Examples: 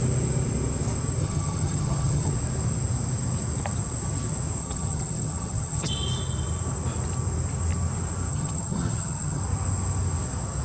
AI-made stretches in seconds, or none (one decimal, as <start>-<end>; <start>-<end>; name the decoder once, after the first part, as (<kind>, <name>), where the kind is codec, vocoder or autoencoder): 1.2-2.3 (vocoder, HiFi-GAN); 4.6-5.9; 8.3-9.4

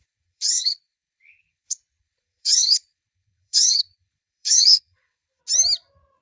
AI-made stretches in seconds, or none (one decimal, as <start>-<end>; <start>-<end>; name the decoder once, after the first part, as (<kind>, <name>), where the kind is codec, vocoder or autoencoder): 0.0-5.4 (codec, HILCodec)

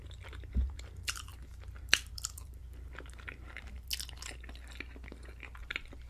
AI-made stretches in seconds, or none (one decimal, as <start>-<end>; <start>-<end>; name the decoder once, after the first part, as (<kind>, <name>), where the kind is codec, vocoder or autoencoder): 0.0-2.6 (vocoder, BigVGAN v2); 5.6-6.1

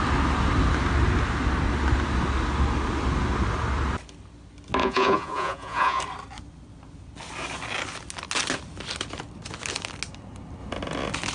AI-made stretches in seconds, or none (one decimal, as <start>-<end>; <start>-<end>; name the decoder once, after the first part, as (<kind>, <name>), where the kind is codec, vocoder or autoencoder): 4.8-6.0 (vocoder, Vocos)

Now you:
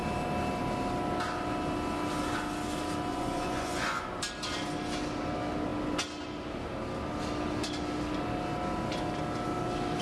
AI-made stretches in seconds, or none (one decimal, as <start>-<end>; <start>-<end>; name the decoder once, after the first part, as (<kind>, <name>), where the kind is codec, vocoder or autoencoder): 3.1-4.1 (vocoder, Vocos)

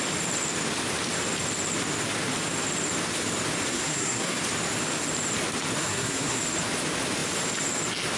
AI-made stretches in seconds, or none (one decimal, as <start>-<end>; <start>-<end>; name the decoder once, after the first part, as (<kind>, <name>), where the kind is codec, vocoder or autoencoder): 3.7-4.4 (codec, SNAC); 5.8-6.4